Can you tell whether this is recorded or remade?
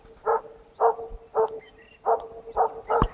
recorded